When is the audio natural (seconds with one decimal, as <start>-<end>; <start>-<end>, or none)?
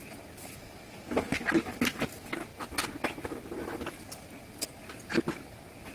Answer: 0.0-5.9